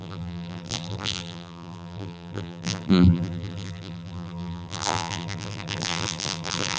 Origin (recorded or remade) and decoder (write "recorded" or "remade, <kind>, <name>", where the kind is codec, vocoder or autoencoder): remade, vocoder, BigVGAN v2